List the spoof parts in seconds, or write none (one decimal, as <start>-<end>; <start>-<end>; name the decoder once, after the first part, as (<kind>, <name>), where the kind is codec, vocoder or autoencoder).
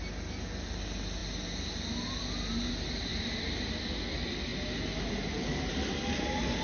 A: 3.1-3.7 (vocoder, BigVGAN v2)